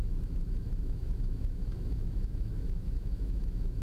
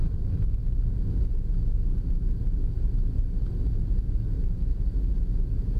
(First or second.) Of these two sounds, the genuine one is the second